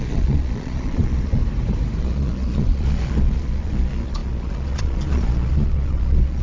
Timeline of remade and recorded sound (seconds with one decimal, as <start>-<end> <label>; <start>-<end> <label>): 0.0-1.4 remade; 1.4-2.0 recorded; 2.0-6.4 remade